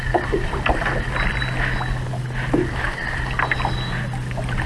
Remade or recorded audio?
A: recorded